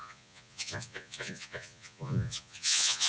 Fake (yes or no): yes